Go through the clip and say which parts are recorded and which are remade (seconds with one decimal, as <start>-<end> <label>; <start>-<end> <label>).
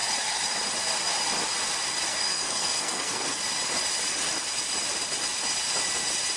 0.0-2.1 recorded; 2.1-3.4 remade; 3.4-6.4 recorded